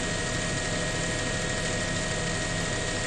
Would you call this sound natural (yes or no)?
yes